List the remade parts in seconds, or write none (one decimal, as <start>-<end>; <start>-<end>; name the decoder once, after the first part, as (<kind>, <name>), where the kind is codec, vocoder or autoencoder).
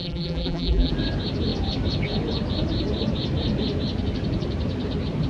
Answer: 0.0-0.9 (vocoder, BigVGAN v2)